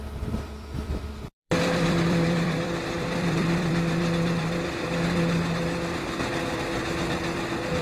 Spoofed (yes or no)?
yes